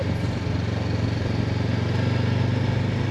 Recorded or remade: recorded